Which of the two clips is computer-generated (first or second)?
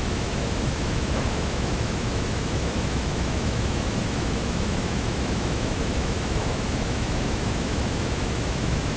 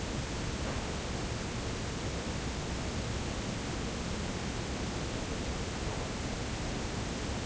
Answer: first